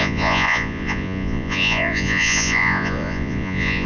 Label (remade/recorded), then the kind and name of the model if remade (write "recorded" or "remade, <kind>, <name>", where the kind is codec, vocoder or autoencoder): remade, vocoder, Vocos